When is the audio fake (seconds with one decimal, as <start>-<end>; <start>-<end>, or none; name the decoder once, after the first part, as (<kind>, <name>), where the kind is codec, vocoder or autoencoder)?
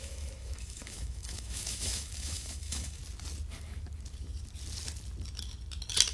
0.0-3.0 (autoencoder, DAC-VAE)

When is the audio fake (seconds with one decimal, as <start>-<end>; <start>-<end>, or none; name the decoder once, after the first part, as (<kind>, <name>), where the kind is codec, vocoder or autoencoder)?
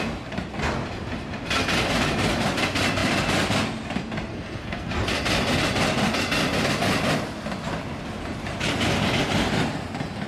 4.3-4.9 (codec, SNAC)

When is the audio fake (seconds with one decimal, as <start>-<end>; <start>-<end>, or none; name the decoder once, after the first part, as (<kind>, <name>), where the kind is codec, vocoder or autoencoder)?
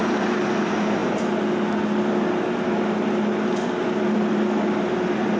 none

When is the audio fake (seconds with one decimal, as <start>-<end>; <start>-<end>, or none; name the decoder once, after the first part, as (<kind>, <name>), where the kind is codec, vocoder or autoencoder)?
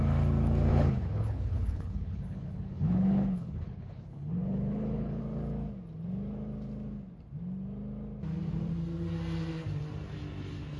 0.7-5.2 (codec, HILCodec)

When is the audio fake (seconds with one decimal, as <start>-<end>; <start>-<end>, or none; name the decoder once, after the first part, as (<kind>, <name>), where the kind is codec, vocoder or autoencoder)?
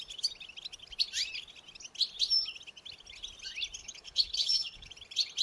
3.8-4.9 (codec, HILCodec)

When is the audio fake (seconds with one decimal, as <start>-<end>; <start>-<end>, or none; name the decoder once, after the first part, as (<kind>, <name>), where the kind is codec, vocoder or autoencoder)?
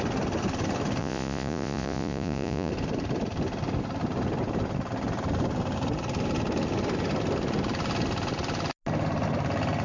1.0-2.7 (vocoder, Vocos)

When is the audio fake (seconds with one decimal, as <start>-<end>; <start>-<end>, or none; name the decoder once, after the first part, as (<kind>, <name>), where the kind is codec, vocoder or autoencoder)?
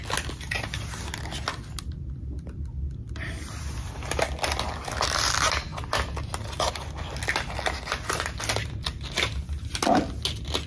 none